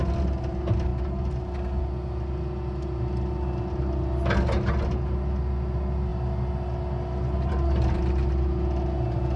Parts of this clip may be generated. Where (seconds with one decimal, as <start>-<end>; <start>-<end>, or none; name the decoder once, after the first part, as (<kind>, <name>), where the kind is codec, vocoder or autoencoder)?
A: none